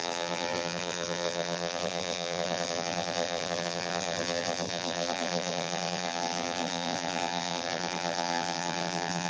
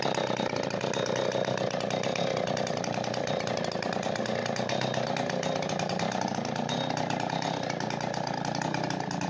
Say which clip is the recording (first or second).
second